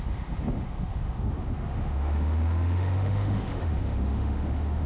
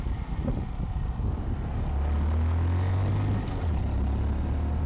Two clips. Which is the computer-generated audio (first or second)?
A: first